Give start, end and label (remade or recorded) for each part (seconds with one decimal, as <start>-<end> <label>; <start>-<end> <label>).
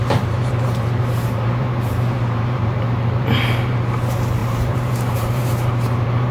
0.0-3.8 remade; 3.8-4.4 recorded; 4.4-6.3 remade